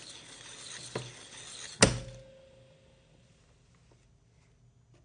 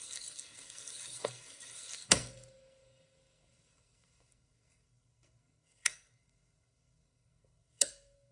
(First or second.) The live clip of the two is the first